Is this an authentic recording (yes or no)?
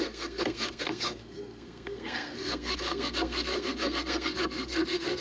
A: no